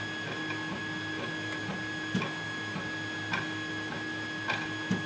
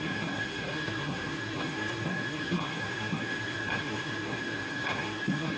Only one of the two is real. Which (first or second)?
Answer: first